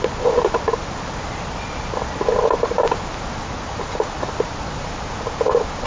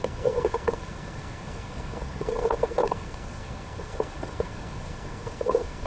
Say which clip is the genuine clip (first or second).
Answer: first